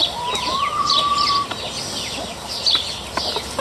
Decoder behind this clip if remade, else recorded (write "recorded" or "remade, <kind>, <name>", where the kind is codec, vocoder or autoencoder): recorded